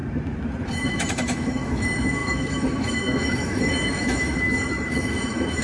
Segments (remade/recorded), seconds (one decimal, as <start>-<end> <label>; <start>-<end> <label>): 0.0-0.8 recorded; 0.8-5.6 remade